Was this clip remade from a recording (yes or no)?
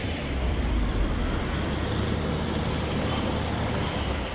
yes